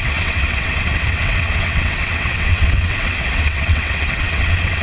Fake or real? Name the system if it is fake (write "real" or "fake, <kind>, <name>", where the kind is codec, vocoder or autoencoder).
fake, vocoder, WaveNeXt